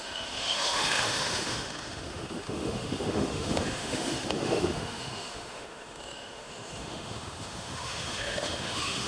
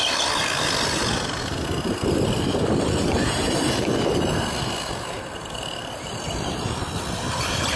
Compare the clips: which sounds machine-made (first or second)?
first